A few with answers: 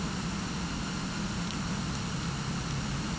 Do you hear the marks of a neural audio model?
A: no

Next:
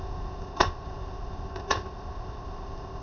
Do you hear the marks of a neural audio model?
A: yes